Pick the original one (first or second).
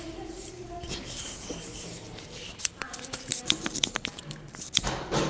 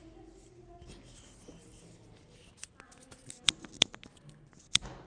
second